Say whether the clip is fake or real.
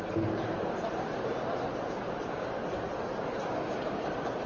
real